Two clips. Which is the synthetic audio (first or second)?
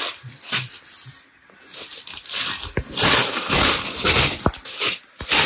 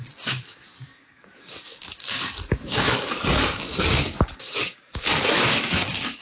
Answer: second